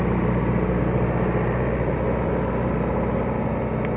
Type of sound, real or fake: real